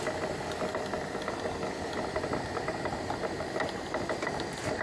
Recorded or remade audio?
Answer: recorded